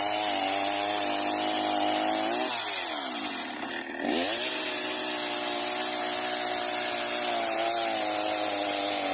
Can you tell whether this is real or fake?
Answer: real